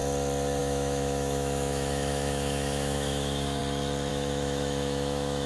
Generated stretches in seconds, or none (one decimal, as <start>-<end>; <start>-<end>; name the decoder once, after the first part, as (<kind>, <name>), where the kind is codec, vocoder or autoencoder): 0.6-3.6 (autoencoder, DAC-VAE); 4.1-5.5